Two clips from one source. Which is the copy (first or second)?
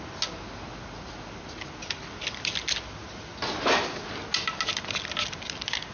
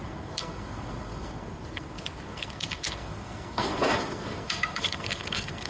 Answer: second